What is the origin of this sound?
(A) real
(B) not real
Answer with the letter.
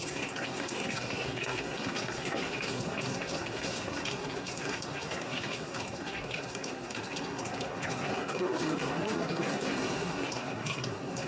B